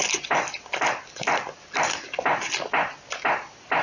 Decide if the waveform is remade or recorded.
recorded